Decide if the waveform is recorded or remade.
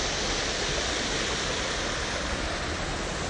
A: recorded